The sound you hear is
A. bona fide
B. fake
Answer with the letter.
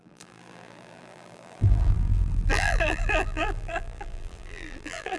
B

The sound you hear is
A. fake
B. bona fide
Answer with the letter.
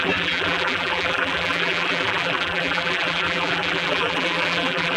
A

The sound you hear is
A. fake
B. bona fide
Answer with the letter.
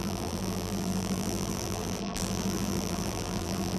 A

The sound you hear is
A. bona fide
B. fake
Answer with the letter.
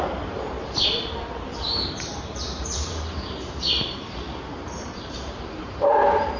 B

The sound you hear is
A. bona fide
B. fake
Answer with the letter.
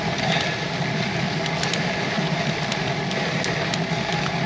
A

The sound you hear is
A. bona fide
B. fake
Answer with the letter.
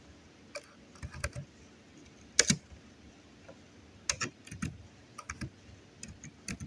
A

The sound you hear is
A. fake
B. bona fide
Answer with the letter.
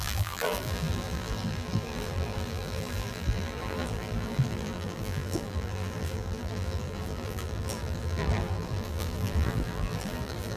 A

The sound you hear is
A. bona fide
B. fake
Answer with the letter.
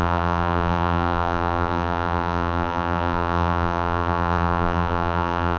B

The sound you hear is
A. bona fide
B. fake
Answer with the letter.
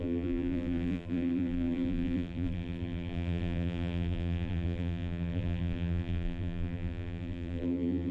B